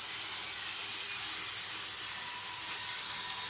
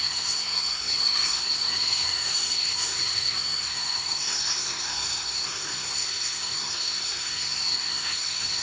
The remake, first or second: second